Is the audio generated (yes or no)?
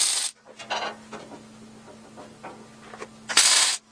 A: no